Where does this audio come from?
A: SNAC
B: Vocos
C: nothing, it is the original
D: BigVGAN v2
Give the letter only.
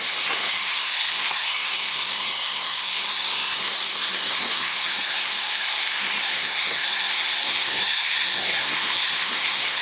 A